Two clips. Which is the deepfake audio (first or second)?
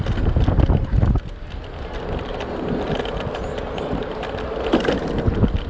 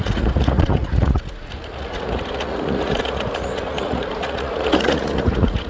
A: second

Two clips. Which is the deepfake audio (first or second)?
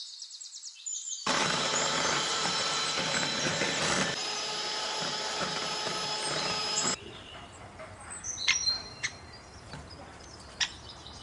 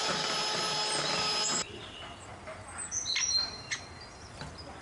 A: first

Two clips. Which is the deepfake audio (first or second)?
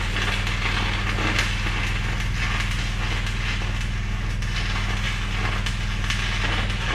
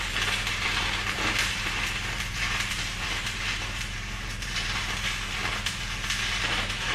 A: second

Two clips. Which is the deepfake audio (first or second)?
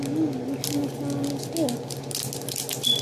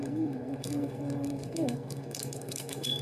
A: second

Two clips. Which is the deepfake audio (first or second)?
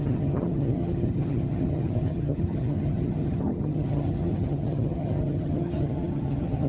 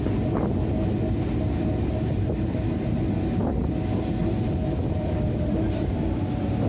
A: first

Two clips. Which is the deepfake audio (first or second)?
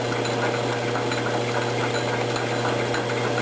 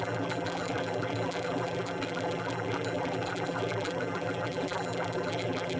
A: second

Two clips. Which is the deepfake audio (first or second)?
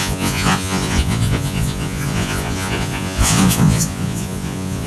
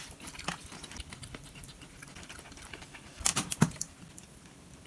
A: first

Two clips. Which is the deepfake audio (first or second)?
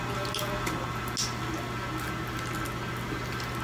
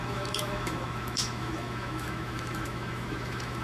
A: second